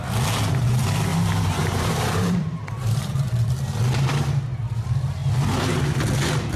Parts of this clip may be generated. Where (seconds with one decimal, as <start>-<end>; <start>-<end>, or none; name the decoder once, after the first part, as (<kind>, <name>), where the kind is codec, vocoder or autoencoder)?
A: 1.1-3.5 (vocoder, BigVGAN v2)